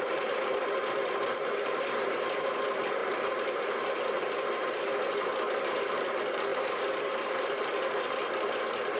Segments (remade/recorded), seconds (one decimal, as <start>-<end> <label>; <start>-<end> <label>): 0.0-4.9 remade; 4.9-5.6 recorded; 5.6-9.0 remade